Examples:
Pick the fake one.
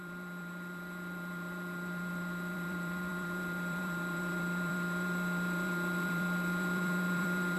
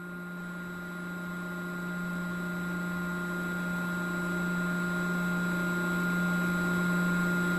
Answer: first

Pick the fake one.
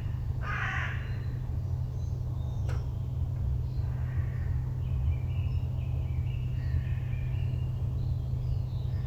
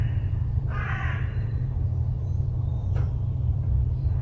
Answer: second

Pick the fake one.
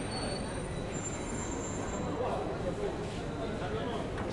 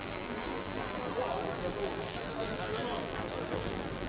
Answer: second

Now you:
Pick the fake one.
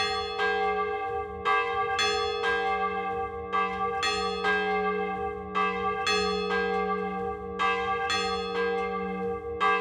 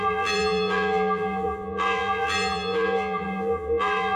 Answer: second